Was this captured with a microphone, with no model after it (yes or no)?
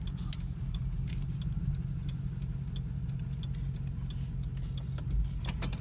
yes